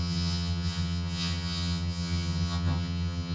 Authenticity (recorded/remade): remade